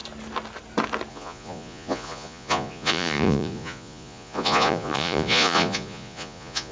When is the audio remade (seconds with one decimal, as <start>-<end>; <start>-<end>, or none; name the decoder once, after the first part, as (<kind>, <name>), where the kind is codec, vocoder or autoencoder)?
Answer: 1.1-6.7 (vocoder, Vocos)